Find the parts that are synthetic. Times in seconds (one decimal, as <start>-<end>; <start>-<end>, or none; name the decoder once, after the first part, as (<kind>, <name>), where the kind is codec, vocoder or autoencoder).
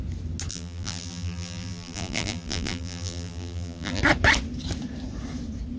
0.5-4.0 (vocoder, BigVGAN v2)